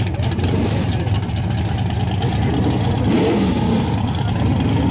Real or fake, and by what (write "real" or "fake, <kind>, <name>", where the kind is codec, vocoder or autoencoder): real